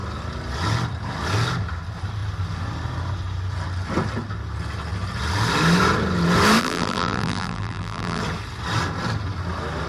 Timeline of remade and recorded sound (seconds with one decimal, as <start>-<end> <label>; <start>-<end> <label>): 0.0-6.6 recorded; 6.6-8.2 remade; 8.2-9.9 recorded